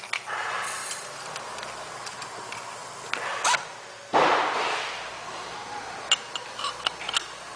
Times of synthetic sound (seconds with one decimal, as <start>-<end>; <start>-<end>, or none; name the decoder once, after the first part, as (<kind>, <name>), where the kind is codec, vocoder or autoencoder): 0.8-1.4 (vocoder, BigVGAN v2)